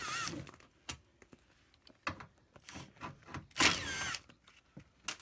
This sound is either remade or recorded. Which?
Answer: recorded